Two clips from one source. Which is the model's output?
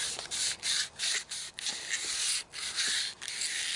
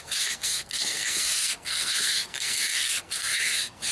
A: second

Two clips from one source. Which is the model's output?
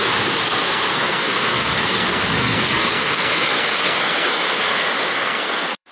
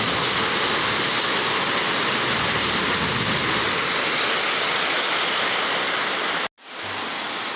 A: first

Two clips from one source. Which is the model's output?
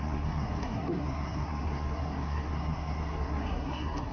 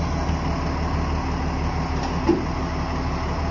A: first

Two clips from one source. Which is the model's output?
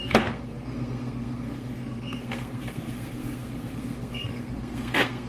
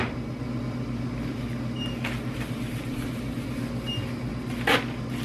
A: first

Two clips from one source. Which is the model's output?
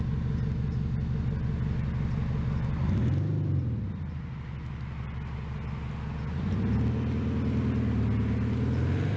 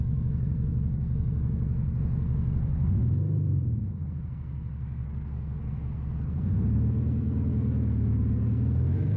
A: second